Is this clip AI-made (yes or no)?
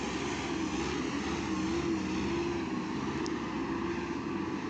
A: no